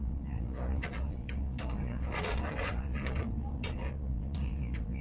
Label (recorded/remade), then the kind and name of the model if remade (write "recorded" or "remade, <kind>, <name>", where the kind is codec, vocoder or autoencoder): remade, vocoder, Vocos